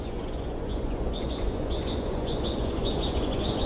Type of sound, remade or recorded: remade